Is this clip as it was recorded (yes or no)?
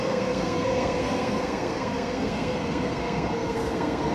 no